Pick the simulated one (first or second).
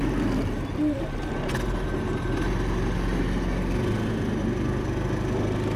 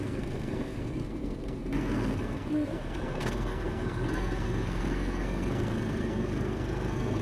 second